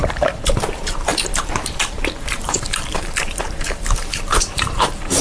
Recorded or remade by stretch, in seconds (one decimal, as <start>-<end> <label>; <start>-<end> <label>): 0.0-5.2 remade